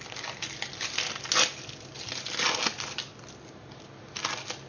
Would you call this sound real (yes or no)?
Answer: yes